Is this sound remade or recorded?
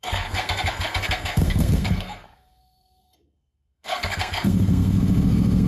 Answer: remade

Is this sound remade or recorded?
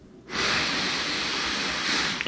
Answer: recorded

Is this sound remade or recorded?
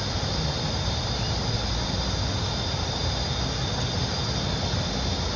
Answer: recorded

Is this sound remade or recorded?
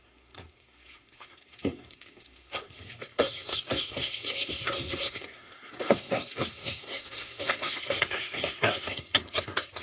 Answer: remade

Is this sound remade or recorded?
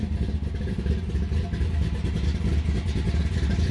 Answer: recorded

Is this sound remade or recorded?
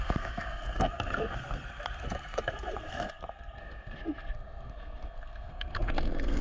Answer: remade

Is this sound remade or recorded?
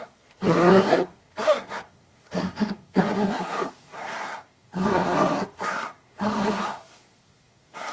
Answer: remade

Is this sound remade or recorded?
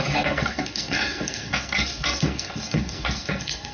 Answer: remade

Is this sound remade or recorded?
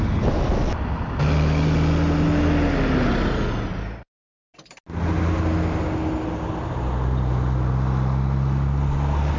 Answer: recorded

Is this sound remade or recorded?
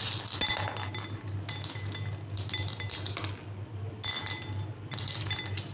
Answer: recorded